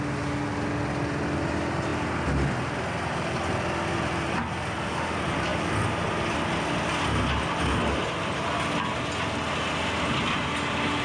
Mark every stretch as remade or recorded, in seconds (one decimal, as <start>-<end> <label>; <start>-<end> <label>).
0.0-11.0 recorded